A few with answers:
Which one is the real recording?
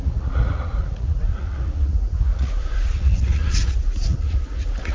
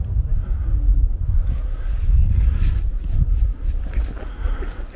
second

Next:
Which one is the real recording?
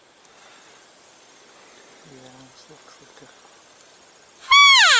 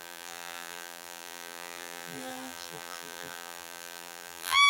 first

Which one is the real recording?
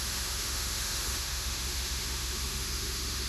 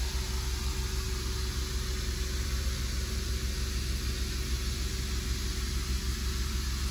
second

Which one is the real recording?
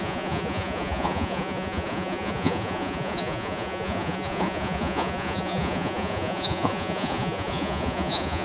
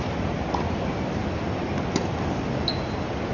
second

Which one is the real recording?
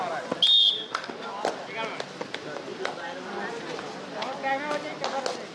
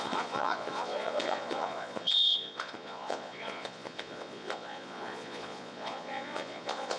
first